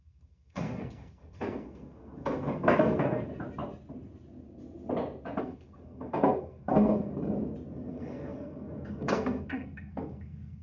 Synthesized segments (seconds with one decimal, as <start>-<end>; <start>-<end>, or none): 0.0-3.3; 5.4-7.1; 7.9-10.6